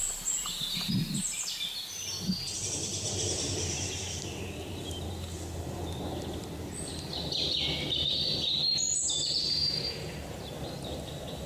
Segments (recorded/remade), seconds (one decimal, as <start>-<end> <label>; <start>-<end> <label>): 0.0-0.9 remade; 0.9-2.6 recorded; 2.6-3.9 remade; 3.9-11.5 recorded